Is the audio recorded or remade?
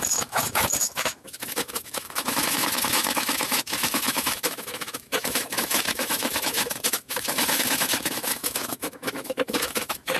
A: remade